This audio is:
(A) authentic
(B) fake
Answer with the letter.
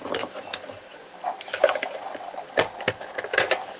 A